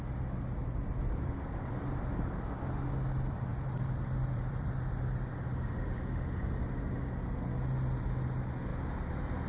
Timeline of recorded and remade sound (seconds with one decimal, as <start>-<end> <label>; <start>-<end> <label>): 0.0-0.6 recorded; 0.6-1.6 remade; 1.6-3.5 recorded; 3.5-5.8 remade; 5.8-8.7 recorded; 8.7-9.5 remade